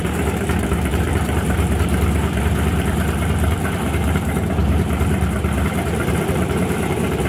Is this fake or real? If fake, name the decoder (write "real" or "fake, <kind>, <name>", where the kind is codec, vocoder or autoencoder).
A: fake, vocoder, BigVGAN v2